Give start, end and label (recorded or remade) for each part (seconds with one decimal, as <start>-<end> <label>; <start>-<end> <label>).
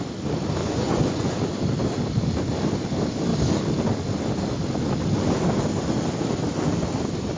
0.0-0.6 recorded; 0.6-1.3 remade; 1.3-7.4 recorded